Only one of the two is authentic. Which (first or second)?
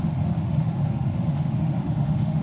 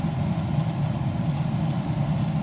second